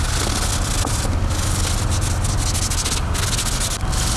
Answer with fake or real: real